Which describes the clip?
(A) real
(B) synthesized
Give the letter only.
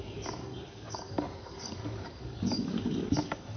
B